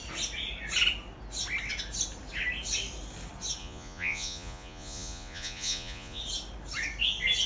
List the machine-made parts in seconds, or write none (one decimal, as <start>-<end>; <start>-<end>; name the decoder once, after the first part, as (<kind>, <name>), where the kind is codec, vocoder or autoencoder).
3.6-6.2 (vocoder, Vocos)

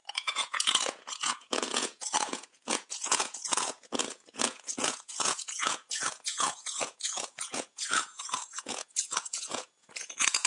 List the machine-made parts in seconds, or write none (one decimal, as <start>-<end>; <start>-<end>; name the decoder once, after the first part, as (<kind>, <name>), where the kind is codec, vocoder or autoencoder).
0.0-10.5 (vocoder, Vocos)

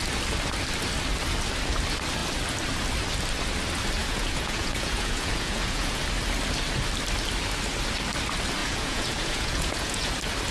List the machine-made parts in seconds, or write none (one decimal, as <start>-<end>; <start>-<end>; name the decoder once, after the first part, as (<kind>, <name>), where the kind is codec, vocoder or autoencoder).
4.0-6.0 (vocoder, Vocos); 8.6-10.1

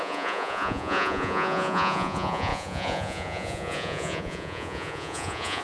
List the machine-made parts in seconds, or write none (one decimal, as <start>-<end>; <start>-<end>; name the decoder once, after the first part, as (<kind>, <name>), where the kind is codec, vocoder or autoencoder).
0.0-5.6 (vocoder, Vocos)

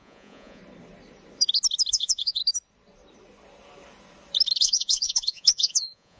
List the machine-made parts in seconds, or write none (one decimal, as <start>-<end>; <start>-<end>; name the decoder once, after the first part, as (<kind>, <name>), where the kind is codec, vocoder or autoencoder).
0.0-0.6 (vocoder, Vocos); 1.9-2.4; 4.6-6.2

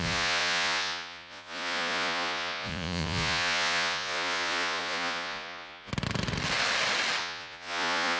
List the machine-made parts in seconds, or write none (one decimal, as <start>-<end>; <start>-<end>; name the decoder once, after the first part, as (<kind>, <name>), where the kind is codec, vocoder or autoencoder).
0.0-5.9 (vocoder, Vocos); 7.2-8.2